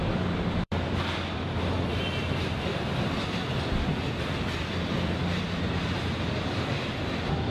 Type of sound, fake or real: fake